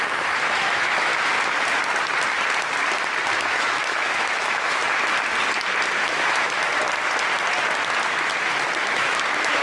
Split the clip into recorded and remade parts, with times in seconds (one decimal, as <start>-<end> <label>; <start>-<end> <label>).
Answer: 0.0-1.1 remade; 1.1-3.4 recorded; 3.4-4.8 remade; 4.8-6.1 recorded; 6.1-6.7 remade; 6.7-8.8 recorded; 8.8-9.6 remade

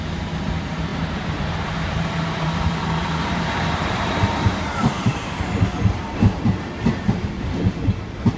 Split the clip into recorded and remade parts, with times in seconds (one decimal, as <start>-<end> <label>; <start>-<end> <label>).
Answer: 0.0-0.9 recorded; 0.9-2.8 remade; 2.8-3.2 recorded; 3.2-5.4 remade; 5.4-8.4 recorded

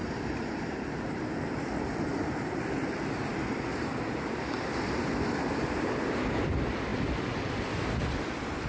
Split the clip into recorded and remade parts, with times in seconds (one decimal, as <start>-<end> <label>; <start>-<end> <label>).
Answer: 0.0-8.7 recorded

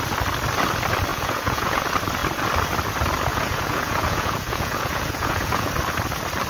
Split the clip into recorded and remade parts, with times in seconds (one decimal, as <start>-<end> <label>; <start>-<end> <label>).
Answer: 0.0-1.1 recorded; 1.1-1.8 remade; 1.8-3.3 recorded; 3.3-5.7 remade; 5.7-6.5 recorded

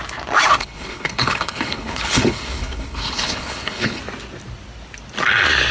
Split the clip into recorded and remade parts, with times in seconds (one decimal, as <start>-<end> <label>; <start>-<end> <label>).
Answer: 0.0-0.6 recorded; 0.6-4.0 remade; 4.0-5.7 recorded

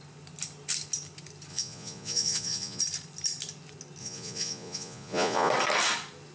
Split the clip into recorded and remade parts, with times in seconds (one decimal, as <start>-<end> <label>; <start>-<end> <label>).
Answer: 0.0-1.5 recorded; 1.5-2.8 remade; 2.8-4.0 recorded; 4.0-5.5 remade; 5.5-6.3 recorded

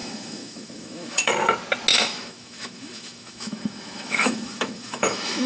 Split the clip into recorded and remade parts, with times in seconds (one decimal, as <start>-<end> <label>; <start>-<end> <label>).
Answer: 0.0-1.3 remade; 1.3-1.9 recorded; 1.9-5.5 remade